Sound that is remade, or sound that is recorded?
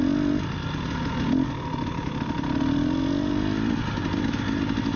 recorded